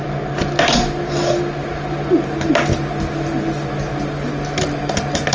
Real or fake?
real